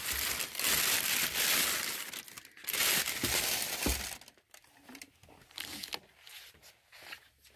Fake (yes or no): no